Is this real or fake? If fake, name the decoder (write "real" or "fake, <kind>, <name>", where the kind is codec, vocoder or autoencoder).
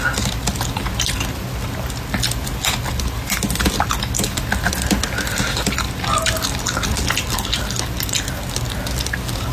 real